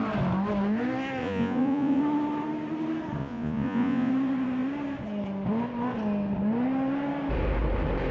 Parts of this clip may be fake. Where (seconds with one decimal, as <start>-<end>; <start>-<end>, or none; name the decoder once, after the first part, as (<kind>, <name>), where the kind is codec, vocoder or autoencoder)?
1.2-2.0 (vocoder, Vocos); 3.2-4.1